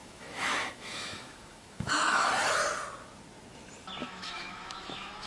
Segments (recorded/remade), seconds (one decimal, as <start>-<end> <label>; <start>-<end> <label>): 0.0-2.3 remade; 2.3-4.0 recorded; 4.0-5.3 remade